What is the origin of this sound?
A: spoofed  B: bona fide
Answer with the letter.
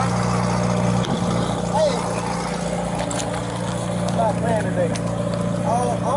B